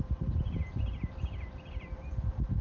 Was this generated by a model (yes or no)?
no